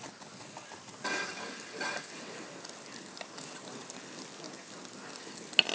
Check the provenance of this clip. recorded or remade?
recorded